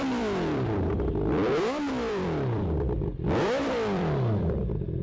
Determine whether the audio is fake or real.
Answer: fake